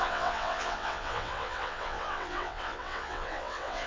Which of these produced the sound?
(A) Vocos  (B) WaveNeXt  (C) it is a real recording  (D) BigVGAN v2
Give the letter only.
B